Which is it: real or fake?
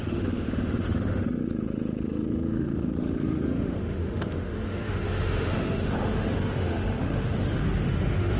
fake